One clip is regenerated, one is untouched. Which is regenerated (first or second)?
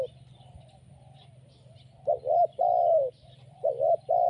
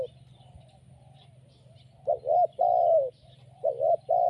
first